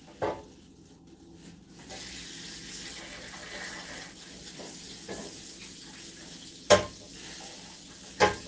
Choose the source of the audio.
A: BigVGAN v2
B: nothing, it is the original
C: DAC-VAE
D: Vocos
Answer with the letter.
B